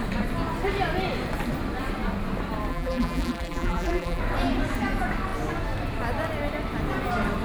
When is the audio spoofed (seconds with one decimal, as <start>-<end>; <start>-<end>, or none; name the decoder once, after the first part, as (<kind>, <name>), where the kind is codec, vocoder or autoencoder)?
2.7-4.2 (vocoder, BigVGAN v2)